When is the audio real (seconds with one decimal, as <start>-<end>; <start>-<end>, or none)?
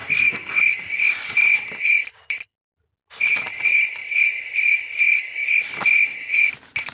0.6-6.9